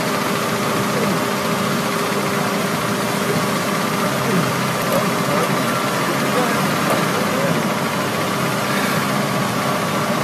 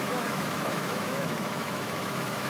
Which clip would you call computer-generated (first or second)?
second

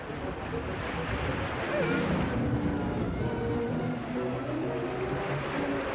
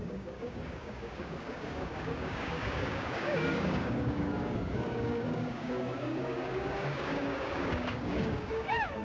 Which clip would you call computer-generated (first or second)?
second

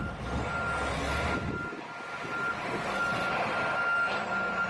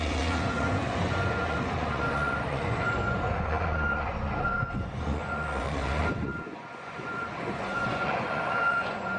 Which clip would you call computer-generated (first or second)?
second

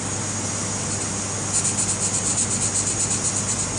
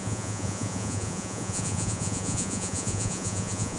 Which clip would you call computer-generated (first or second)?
second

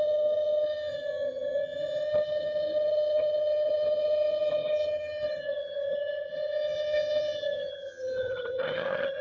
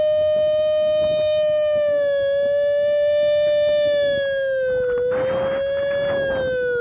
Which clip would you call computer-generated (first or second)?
first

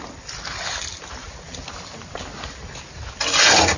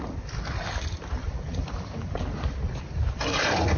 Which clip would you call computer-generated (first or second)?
second